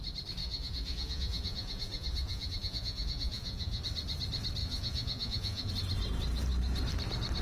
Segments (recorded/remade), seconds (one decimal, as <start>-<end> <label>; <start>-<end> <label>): 0.0-0.4 recorded; 0.4-3.8 remade; 3.8-4.6 recorded; 4.6-5.7 remade; 5.7-7.4 recorded